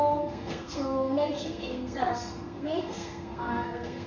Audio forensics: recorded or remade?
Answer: remade